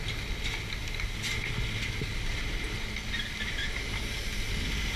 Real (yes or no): yes